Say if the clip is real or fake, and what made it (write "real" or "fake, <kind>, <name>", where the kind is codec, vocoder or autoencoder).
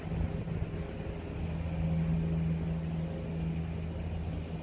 real